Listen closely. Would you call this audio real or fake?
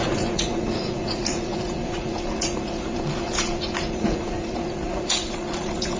fake